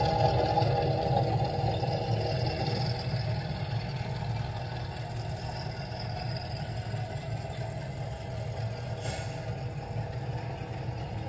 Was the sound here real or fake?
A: real